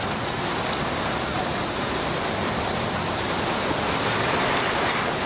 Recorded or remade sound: recorded